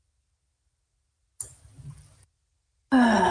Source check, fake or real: real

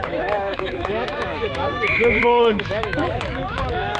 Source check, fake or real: fake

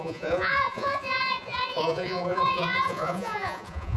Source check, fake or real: fake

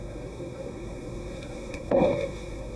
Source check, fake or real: fake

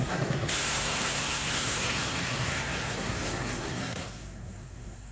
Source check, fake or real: fake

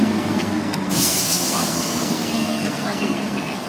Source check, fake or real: fake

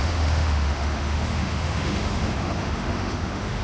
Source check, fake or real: fake